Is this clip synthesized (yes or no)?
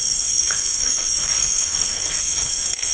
yes